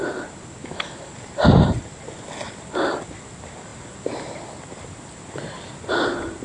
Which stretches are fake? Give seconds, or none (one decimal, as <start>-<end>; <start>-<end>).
0.6-1.1